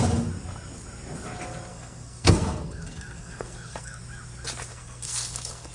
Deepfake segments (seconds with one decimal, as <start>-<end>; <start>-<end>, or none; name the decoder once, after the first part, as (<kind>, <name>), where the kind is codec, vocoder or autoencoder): 1.7-4.0 (codec, SNAC); 4.7-5.7